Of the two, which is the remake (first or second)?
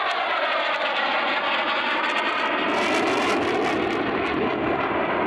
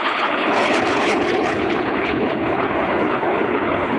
second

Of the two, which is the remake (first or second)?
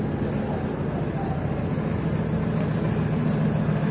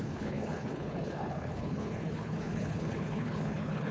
second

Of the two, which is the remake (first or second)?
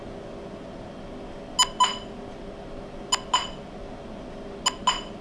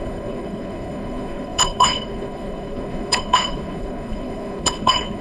second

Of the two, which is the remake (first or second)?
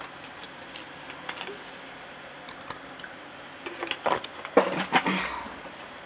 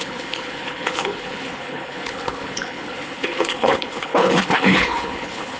second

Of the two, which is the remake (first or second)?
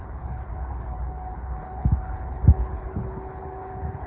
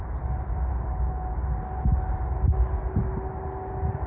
first